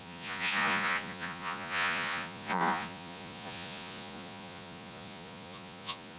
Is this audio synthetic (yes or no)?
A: yes